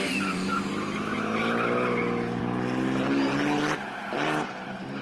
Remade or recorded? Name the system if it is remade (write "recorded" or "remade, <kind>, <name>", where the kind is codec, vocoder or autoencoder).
recorded